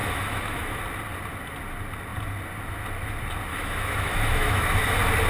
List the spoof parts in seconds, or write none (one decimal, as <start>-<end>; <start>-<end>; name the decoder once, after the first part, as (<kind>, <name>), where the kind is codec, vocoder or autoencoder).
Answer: 0.0-0.8 (autoencoder, DAC-VAE); 3.5-4.8